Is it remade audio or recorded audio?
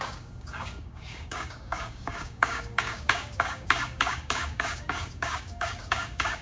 remade